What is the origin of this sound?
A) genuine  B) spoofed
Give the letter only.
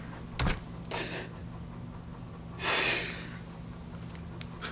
A